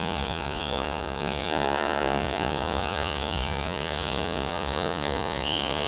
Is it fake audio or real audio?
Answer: fake